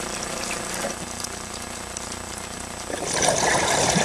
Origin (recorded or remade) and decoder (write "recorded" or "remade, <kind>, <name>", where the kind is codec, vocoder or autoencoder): recorded